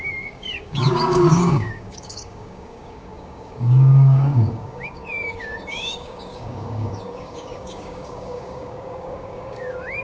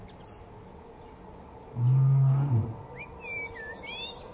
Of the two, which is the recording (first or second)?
second